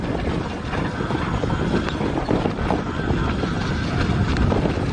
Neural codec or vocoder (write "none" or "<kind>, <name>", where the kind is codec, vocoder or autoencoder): none